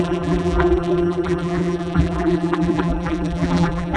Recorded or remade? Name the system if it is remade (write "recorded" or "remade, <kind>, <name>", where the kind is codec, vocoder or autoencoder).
remade, vocoder, BigVGAN v2